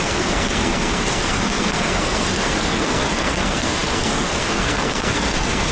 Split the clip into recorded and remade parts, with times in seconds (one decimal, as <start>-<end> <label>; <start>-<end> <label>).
0.0-5.7 remade